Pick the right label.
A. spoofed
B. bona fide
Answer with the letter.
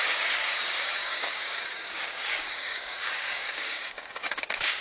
A